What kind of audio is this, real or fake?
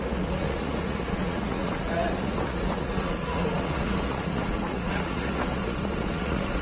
fake